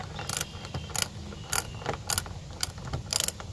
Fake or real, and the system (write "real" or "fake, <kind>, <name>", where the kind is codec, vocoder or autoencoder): real